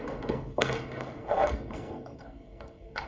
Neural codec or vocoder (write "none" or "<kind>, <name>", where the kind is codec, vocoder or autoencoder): codec, SNAC